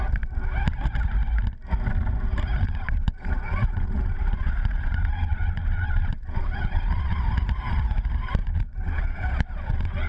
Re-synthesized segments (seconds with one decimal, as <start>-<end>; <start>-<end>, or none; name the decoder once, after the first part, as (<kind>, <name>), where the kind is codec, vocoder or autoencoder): 2.6-7.2 (vocoder, Vocos); 8.4-10.1